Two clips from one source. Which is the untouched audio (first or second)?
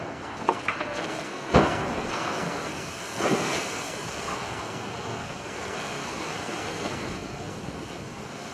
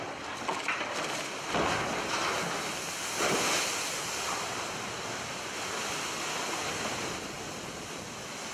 second